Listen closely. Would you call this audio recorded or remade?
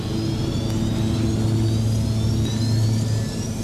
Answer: recorded